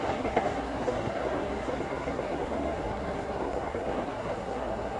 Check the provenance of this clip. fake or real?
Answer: fake